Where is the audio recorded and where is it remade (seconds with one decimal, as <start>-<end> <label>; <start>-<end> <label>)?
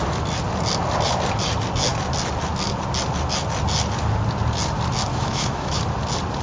0.0-5.1 recorded; 5.1-5.8 remade; 5.8-6.4 recorded